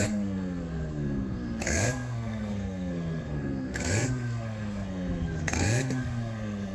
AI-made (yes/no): yes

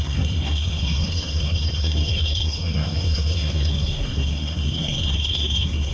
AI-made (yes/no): yes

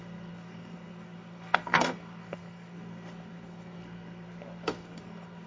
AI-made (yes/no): yes